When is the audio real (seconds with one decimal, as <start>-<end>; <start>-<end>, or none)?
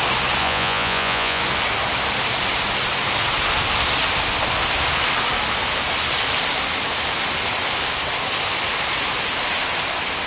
0.0-0.4; 1.4-10.3